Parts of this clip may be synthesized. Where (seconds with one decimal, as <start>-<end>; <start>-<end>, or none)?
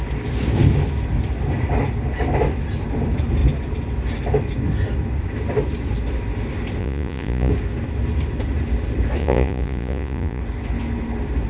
6.8-7.5; 9.2-10.4